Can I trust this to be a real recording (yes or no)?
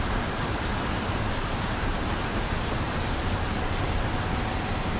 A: no